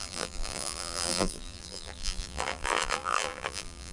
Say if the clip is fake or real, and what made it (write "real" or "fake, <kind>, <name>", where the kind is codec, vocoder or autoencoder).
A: fake, vocoder, BigVGAN v2